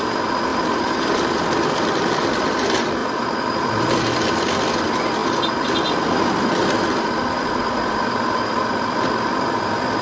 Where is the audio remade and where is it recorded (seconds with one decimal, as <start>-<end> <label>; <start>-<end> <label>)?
0.0-0.5 recorded; 0.5-2.6 remade; 2.6-3.0 recorded; 3.0-3.8 remade; 3.8-5.2 recorded; 5.2-5.7 remade; 5.7-10.0 recorded